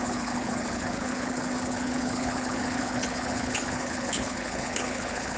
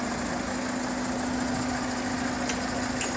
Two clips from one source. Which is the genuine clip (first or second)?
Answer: second